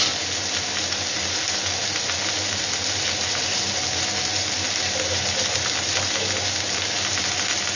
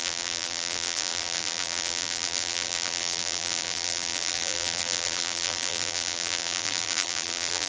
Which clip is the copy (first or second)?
second